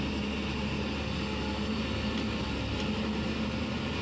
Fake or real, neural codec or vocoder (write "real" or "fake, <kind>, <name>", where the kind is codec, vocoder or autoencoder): real